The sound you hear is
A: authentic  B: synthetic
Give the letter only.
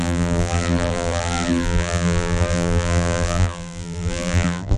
B